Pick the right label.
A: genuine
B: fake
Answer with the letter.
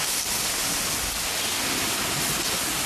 A